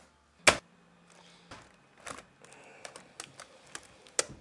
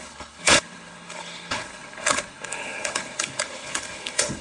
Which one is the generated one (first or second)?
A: second